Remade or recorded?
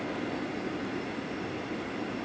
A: recorded